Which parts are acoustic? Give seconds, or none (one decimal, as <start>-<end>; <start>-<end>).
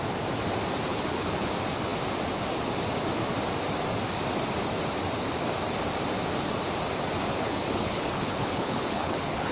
0.0-0.9; 1.5-7.3